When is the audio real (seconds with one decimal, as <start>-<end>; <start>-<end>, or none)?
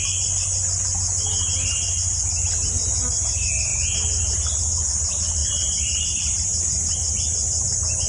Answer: 0.0-5.4